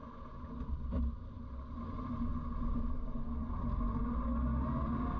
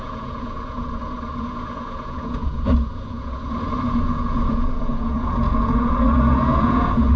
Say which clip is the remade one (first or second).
second